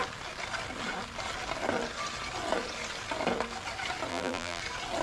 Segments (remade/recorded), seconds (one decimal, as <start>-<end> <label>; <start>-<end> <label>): 0.0-4.1 recorded; 4.1-4.6 remade; 4.6-5.0 recorded